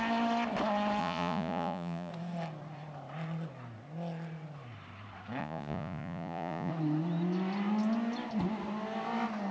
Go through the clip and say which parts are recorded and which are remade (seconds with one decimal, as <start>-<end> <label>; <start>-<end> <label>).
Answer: 0.0-1.0 recorded; 1.0-2.1 remade; 2.1-5.4 recorded; 5.4-6.7 remade; 6.7-9.5 recorded